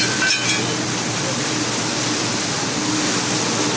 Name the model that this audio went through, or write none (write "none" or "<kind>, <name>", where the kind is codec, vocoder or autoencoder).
none